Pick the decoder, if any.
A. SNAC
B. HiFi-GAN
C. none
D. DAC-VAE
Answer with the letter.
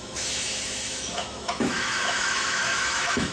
D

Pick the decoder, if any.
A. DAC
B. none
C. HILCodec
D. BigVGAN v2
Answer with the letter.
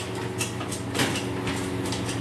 B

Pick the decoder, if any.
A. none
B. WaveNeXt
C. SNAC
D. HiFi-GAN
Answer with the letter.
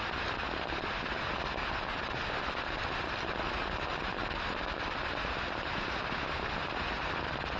A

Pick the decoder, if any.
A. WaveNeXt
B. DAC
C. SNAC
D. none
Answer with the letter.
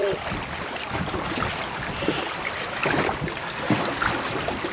D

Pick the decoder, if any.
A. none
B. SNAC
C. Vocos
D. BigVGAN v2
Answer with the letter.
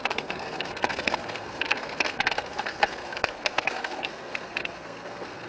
B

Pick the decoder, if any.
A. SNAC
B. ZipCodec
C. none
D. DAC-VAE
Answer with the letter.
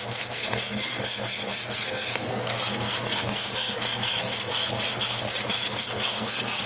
A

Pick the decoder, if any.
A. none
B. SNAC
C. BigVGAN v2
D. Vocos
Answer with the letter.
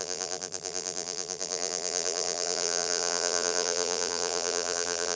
C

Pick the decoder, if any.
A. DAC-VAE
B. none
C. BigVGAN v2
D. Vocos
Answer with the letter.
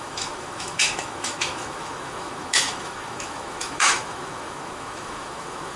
A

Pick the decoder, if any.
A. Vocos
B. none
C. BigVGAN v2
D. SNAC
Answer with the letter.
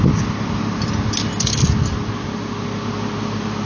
B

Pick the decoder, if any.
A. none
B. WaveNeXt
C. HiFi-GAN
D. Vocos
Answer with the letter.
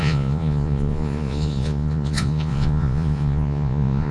D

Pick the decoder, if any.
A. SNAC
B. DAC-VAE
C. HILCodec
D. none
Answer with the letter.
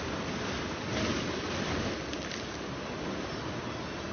D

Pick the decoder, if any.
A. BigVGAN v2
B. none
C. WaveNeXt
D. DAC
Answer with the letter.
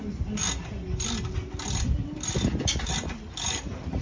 B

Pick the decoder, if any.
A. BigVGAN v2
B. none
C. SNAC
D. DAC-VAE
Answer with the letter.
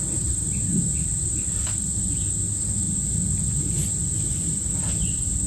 B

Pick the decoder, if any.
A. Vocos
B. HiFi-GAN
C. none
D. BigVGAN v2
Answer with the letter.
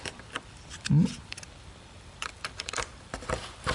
D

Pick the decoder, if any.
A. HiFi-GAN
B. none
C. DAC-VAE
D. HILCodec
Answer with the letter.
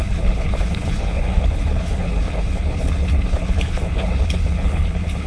D